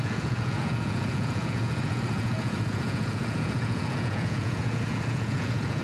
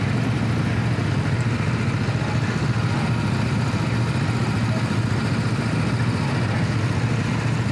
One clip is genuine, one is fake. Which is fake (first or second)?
first